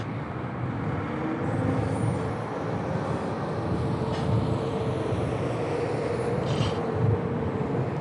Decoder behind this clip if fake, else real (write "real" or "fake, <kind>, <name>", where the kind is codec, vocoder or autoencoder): real